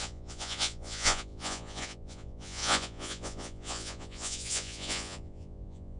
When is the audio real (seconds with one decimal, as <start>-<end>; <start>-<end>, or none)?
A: none